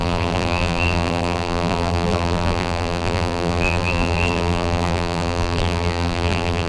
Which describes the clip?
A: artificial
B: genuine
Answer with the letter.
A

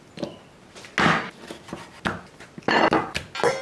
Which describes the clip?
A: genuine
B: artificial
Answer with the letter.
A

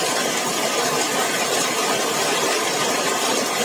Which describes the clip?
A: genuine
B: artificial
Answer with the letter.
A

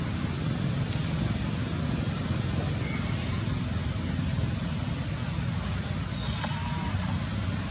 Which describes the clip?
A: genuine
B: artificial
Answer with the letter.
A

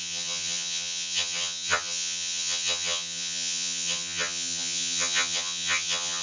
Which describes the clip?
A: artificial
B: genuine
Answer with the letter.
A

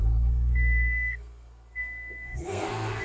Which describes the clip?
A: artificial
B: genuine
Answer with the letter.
A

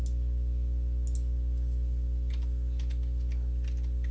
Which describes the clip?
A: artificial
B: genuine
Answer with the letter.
B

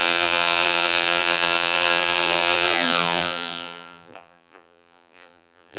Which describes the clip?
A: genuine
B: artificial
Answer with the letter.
B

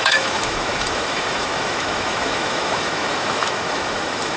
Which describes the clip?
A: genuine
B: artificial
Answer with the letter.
B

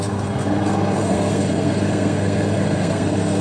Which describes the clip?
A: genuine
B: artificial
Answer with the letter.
B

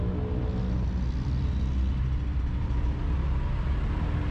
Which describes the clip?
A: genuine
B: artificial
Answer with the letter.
A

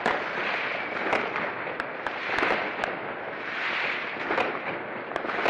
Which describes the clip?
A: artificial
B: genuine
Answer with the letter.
B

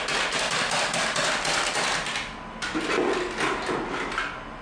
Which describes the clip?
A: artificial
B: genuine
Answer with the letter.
B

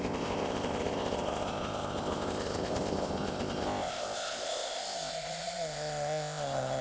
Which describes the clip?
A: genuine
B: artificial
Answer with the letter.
B